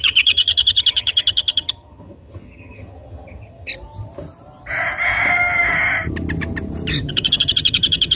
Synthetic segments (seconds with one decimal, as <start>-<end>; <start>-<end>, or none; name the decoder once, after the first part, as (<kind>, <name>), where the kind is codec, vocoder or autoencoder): 0.0-3.7 (vocoder, HiFi-GAN); 6.9-8.2